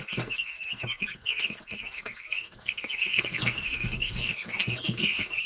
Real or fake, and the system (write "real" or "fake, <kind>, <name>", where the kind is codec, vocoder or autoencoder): fake, codec, SNAC